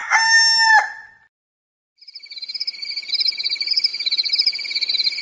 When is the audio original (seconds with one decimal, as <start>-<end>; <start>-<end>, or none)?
0.0-3.9